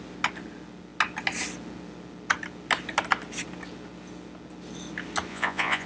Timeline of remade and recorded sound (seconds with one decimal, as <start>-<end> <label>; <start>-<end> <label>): 0.0-5.3 recorded; 5.3-5.9 remade